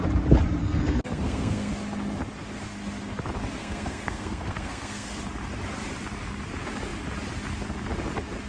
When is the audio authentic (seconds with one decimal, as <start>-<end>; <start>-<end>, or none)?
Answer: 0.0-0.6; 1.7-3.6; 5.2-8.5